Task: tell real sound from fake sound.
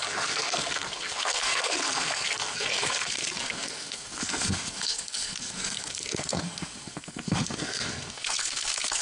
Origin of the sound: fake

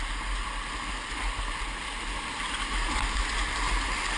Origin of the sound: real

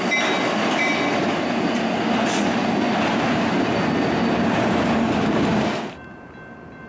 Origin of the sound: real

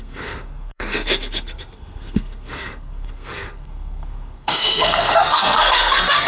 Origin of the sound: fake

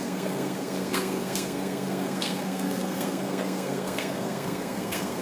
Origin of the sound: fake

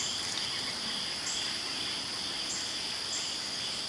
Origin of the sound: real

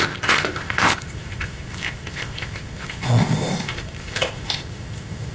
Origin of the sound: fake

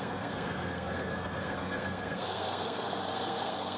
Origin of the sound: fake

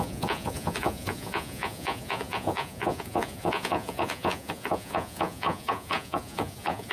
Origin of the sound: fake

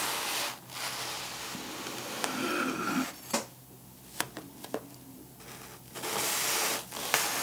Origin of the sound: real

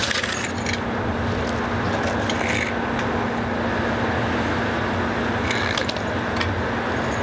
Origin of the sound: real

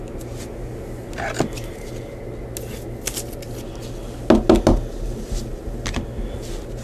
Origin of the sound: real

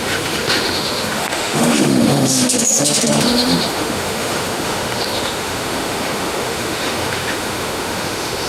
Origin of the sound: fake